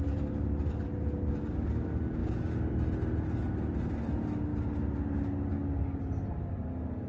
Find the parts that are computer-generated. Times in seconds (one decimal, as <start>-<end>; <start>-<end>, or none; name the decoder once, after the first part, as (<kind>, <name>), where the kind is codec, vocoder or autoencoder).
2.2-2.7 (codec, DAC)